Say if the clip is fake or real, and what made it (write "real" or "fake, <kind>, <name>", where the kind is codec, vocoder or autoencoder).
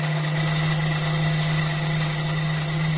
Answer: real